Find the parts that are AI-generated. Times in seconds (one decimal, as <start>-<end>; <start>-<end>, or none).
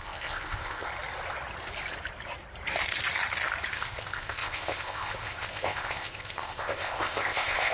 0.0-0.9; 3.7-7.7